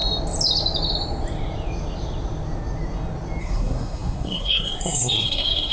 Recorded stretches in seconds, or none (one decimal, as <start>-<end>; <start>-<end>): 0.0-3.4